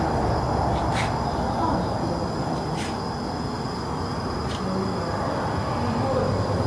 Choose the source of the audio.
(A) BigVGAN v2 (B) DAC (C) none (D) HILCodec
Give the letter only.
C